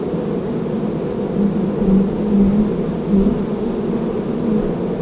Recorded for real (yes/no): yes